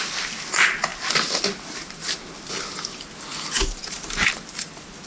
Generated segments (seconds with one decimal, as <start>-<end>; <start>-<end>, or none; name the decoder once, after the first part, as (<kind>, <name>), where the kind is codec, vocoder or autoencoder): none